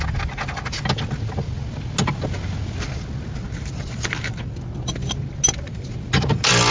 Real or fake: real